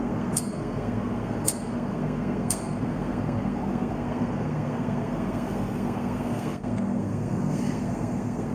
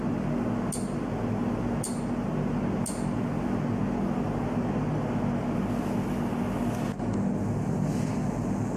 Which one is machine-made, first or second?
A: first